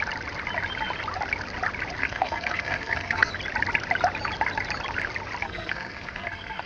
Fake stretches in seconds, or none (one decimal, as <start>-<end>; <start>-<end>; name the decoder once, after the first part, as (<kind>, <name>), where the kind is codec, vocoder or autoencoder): 2.0-3.3 (codec, SNAC); 5.4-6.7